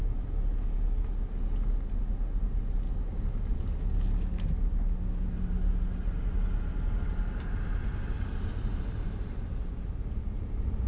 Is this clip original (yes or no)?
yes